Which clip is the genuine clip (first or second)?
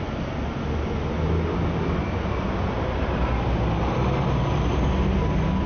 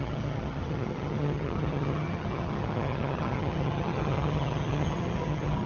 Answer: first